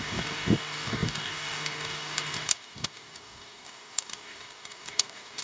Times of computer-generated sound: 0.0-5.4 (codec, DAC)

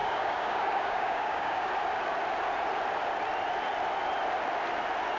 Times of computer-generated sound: 0.0-1.7 (codec, DAC)

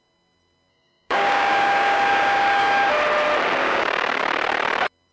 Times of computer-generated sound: 0.7-2.9 (codec, DAC); 3.6-4.2

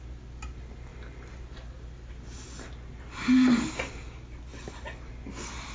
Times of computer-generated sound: none

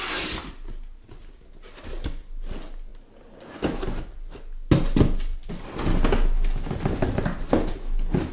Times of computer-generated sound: none

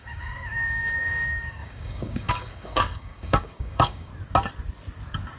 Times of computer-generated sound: 0.0-4.1 (codec, DAC)

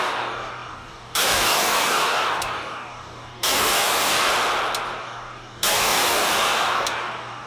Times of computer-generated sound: 0.0-4.3 (codec, DAC); 5.0-7.5